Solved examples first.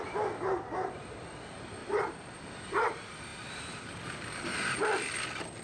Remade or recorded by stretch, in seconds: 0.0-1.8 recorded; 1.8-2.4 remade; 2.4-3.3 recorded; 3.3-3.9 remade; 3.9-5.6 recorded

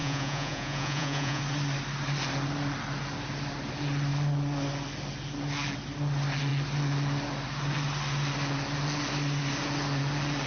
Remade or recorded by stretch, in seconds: 0.0-1.4 remade; 1.4-10.5 recorded

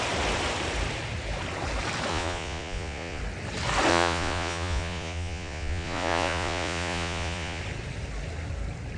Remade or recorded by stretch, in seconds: 0.0-2.1 recorded; 2.1-3.2 remade; 3.2-3.9 recorded; 3.9-7.6 remade; 7.6-9.0 recorded

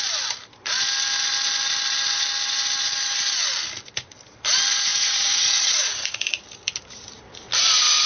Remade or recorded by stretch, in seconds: 0.0-4.9 recorded; 4.9-6.4 remade; 6.4-8.1 recorded

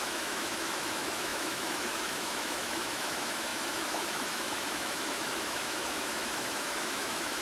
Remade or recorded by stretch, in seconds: 0.0-7.4 remade

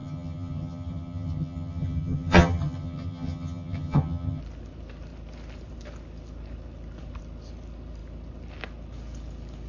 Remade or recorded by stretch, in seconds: 0.0-4.4 remade; 4.4-9.7 recorded

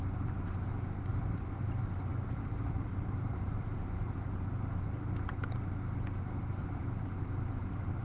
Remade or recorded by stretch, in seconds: 0.0-1.1 recorded; 1.1-1.7 remade; 1.7-2.1 recorded; 2.1-5.1 remade; 5.1-8.0 recorded